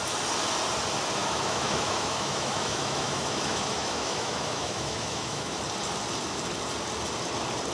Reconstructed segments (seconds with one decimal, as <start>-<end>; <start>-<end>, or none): 1.2-5.6